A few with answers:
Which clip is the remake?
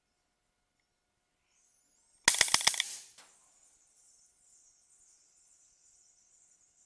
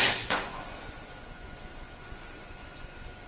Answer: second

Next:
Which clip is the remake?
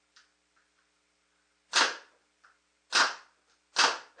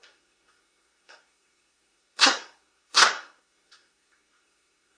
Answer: second